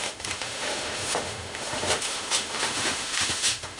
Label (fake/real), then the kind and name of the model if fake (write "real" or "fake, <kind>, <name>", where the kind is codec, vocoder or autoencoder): fake, autoencoder, DAC-VAE